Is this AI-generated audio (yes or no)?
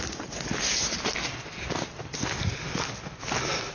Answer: no